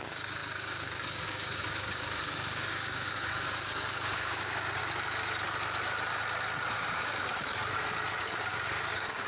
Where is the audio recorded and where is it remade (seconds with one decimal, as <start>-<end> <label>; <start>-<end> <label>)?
0.0-4.8 remade; 4.8-6.7 recorded; 6.7-7.6 remade; 7.6-8.2 recorded; 8.2-9.3 remade